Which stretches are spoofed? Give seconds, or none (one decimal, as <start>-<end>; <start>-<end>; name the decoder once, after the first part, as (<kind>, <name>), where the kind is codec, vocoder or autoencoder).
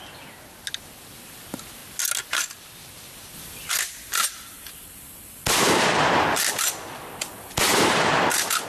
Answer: none